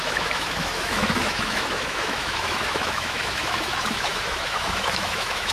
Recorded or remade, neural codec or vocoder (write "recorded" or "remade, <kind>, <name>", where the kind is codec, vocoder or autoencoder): remade, autoencoder, DAC-VAE